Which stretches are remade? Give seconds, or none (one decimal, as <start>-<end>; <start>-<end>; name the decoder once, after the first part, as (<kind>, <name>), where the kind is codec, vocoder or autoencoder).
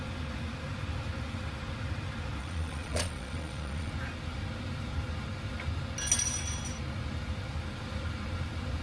2.4-3.9 (vocoder, Vocos)